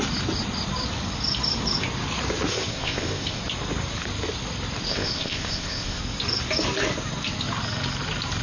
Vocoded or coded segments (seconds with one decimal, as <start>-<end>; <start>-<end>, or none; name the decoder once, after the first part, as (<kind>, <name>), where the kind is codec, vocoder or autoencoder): 2.5-3.4 (codec, ZipCodec); 4.9-6.0